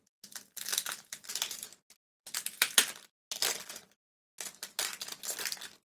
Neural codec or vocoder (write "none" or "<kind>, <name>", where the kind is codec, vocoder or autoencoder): none